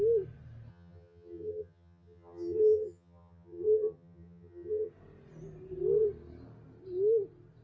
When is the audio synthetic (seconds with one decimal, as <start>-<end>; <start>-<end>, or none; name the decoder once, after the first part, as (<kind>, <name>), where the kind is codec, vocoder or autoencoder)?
0.7-4.9 (vocoder, HiFi-GAN)